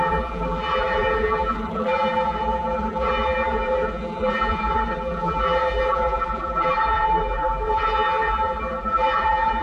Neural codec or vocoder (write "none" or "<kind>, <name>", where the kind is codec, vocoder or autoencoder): vocoder, BigVGAN v2